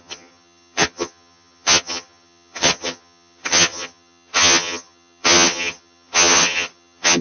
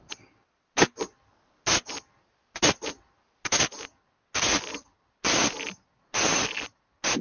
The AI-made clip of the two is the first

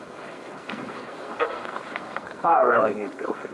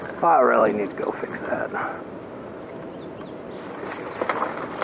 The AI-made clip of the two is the first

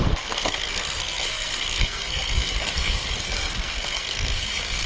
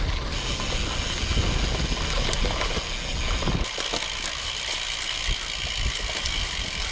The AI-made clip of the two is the first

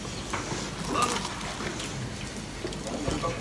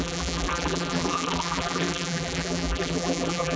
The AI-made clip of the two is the second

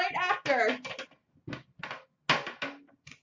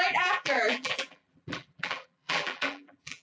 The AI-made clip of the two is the second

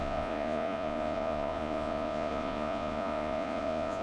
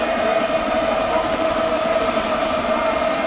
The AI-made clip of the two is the first